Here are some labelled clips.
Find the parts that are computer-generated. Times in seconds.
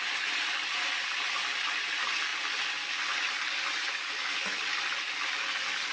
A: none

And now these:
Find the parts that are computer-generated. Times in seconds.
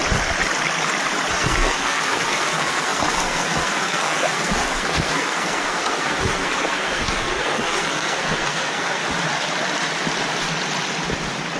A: 1.3-9.0 (codec, SNAC)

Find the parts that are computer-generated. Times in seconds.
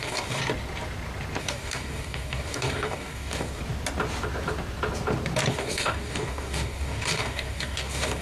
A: 0.0-0.4 (codec, DAC); 1.4-3.6; 5.5-8.2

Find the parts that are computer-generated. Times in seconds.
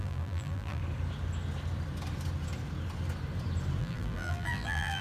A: 0.0-0.8 (vocoder, BigVGAN v2); 3.8-5.0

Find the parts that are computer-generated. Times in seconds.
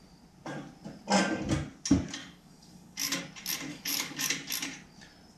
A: 2.2-3.2 (codec, DAC); 3.7-4.3